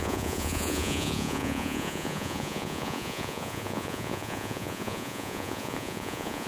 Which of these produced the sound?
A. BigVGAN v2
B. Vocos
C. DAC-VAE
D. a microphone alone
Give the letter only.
B